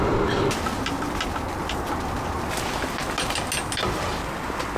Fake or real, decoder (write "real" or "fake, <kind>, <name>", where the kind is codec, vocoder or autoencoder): real